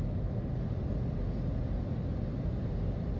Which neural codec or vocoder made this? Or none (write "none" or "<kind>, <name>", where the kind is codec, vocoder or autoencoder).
none